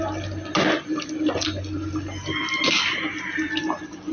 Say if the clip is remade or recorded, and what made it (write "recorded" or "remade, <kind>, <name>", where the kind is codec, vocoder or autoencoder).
recorded